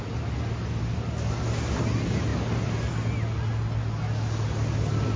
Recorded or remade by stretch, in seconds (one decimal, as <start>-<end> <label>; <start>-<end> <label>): 0.0-5.2 recorded